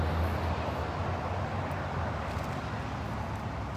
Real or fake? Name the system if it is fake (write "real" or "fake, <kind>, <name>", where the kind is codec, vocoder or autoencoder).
real